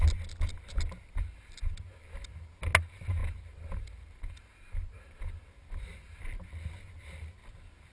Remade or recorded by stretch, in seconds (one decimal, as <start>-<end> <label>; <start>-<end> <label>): 0.0-7.9 recorded